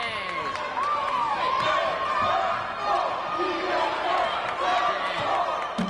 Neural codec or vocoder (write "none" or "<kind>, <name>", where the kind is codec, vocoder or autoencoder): none